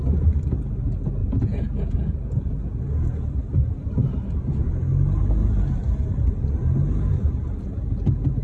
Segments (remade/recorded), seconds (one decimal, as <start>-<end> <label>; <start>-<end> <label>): 0.0-1.2 recorded; 1.2-2.8 remade; 2.8-8.4 recorded